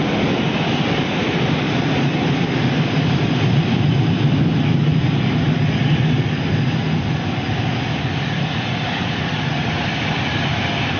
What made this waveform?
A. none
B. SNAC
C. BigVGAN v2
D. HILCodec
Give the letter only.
A